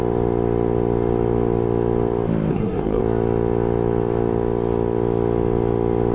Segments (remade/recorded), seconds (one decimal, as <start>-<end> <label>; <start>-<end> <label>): 0.0-2.5 recorded; 2.5-3.0 remade; 3.0-6.1 recorded

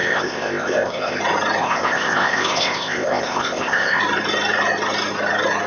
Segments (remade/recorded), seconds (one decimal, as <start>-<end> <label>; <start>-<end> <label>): 0.0-1.2 remade; 1.2-1.6 recorded; 1.6-4.0 remade; 4.0-5.7 recorded

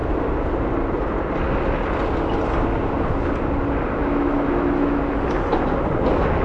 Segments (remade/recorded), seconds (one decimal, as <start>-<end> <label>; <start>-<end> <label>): 0.0-4.0 recorded; 4.0-5.0 remade; 5.0-6.4 recorded